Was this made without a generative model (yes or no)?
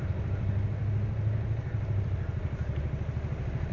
yes